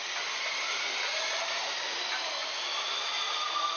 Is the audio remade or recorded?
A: recorded